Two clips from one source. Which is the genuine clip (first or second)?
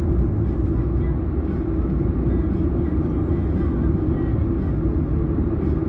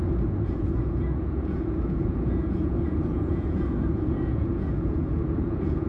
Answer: first